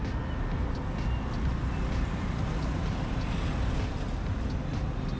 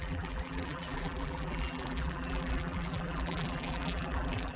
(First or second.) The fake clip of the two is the second